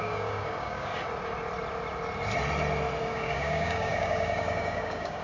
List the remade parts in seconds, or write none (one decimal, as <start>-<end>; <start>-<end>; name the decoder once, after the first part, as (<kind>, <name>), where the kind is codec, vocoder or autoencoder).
0.0-0.9 (codec, DAC); 3.0-5.2